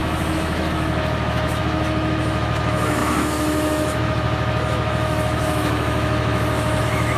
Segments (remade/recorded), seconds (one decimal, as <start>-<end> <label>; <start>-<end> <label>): 0.0-7.2 remade